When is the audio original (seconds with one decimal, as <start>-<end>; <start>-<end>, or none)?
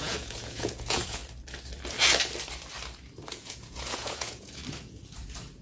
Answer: 1.2-3.3; 4.6-5.6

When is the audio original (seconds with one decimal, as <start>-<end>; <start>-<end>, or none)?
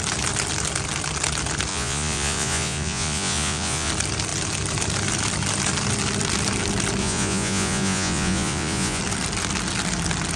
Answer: 0.0-1.7; 3.9-7.0; 9.0-10.4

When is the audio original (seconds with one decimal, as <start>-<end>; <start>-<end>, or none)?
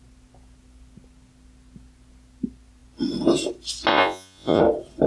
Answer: 0.0-3.9; 4.6-5.1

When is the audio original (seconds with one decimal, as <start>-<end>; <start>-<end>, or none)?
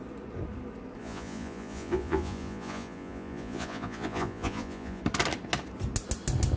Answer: 0.0-1.0; 5.0-6.6